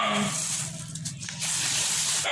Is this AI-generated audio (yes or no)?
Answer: no